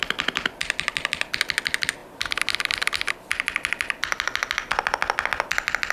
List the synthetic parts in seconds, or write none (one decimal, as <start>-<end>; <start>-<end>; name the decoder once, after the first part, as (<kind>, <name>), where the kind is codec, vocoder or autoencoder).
0.0-1.4 (vocoder, BigVGAN v2)